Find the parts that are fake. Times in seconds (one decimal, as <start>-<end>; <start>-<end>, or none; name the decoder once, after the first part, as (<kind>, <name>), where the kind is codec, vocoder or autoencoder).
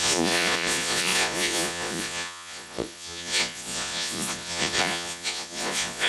0.0-6.1 (vocoder, Vocos)